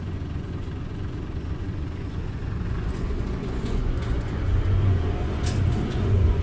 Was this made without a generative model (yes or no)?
no